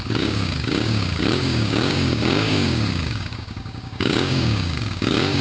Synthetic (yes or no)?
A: yes